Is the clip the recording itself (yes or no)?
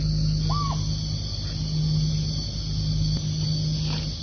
yes